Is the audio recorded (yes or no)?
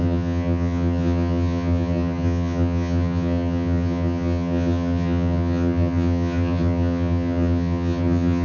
no